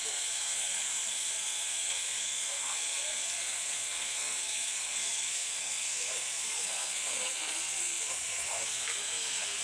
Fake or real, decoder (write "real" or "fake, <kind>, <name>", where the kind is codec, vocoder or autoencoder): fake, codec, SNAC